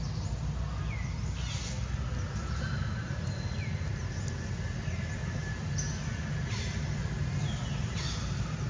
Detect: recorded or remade recorded